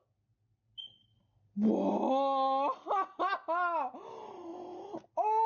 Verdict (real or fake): real